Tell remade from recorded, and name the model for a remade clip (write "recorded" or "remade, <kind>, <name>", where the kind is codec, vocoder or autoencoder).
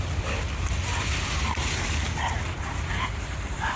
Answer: recorded